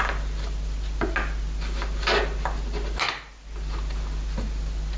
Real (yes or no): yes